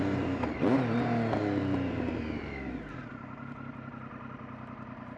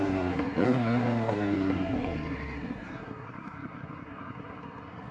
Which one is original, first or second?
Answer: first